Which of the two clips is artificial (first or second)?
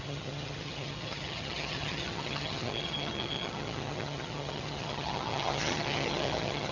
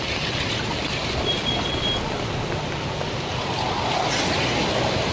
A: first